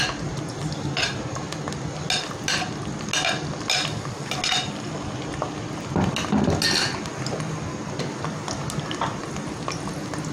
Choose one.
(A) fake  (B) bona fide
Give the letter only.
B